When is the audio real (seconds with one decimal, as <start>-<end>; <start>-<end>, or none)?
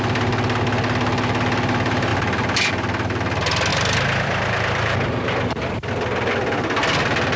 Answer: 0.0-2.1; 2.7-3.7; 5.9-7.4